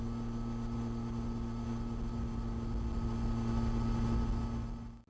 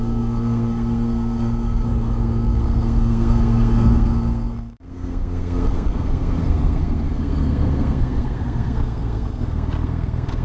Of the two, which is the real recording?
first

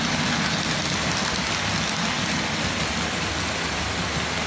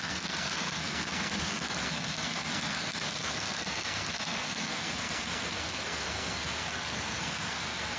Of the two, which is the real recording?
first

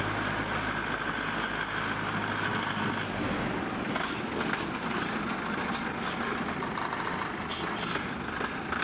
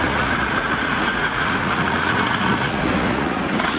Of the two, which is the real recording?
first